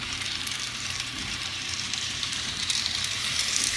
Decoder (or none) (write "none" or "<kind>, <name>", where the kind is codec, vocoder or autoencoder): vocoder, BigVGAN v2